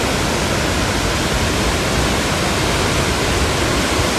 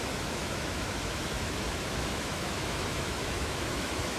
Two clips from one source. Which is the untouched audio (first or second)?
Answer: first